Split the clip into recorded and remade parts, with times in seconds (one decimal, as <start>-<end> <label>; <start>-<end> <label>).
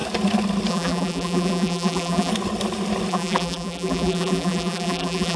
0.0-0.7 recorded; 0.7-2.3 remade; 2.3-3.1 recorded; 3.1-5.4 remade